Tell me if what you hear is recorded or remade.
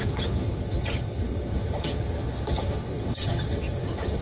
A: remade